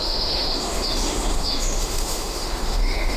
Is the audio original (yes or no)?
no